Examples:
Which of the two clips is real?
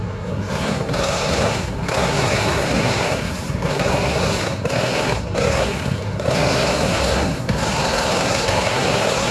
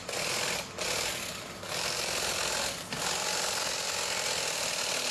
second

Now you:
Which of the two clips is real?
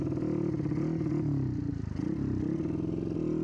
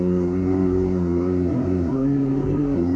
first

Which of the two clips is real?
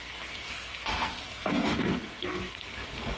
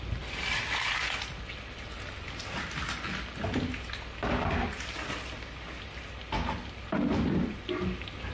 second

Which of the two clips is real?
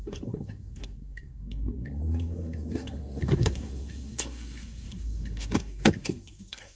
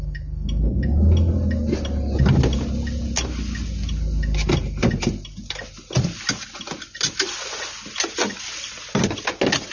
second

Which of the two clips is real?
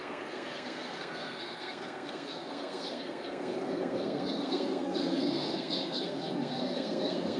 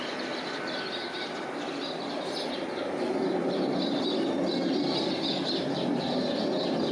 second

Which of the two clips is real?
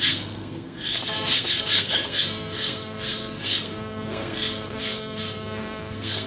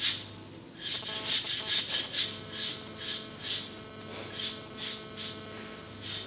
second